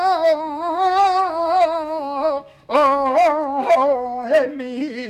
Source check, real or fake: fake